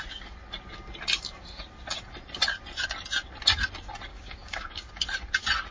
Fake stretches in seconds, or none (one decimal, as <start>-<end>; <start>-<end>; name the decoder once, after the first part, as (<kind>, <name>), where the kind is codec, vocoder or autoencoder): 4.1-4.9 (codec, DAC)